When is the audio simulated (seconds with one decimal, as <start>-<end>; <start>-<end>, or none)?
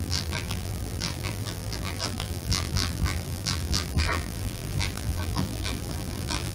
0.0-6.5